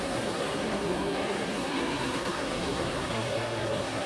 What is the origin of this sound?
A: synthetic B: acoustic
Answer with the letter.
A